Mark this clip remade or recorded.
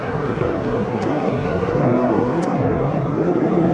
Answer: remade